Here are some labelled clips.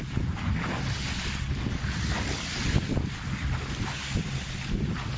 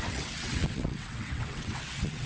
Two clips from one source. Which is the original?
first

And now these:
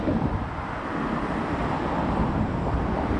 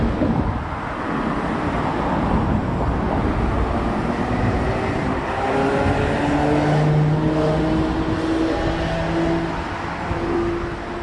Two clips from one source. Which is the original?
second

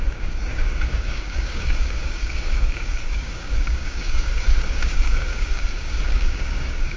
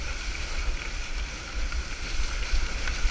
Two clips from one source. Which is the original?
second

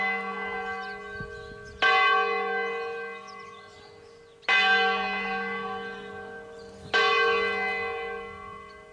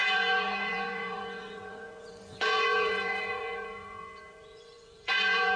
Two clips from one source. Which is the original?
first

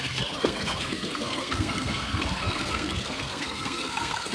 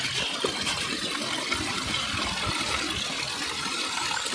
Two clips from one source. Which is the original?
second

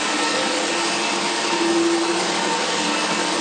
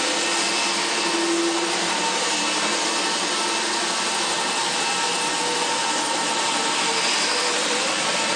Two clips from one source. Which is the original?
second